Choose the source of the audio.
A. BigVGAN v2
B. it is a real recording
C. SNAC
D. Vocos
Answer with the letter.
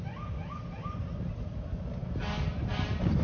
B